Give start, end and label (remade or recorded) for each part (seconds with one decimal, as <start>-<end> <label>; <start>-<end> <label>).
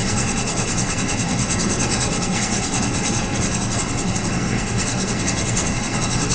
0.0-6.3 remade